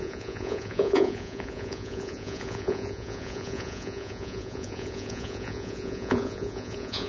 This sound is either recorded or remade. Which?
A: remade